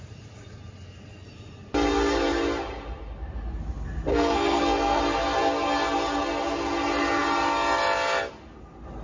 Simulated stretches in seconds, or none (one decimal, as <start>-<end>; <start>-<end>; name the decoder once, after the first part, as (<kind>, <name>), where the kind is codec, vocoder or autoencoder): 4.1-5.0 (codec, SNAC)